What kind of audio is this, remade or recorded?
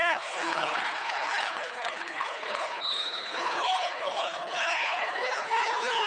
remade